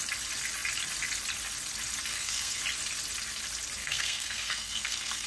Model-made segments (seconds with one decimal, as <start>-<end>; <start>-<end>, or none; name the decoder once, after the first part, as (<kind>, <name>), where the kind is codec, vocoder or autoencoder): 2.1-2.6 (codec, SNAC); 3.8-5.3